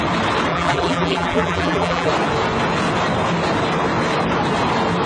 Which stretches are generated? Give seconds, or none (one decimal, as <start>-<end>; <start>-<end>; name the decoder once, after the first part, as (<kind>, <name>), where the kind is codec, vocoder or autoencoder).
0.5-2.1 (vocoder, BigVGAN v2)